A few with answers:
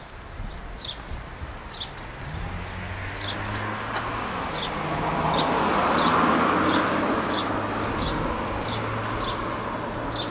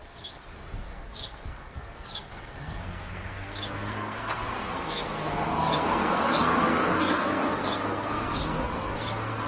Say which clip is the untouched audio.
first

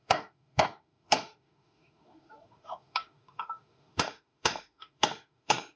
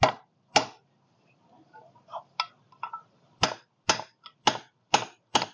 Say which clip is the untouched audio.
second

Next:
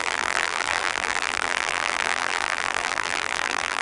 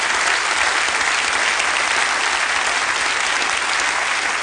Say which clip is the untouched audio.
second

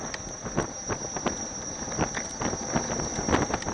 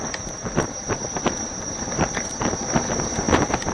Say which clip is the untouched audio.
first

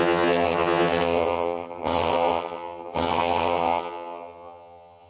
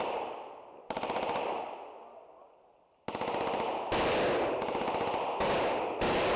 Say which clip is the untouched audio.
second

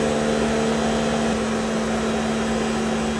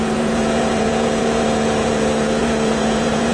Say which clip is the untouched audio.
first